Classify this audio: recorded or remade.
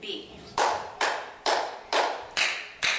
recorded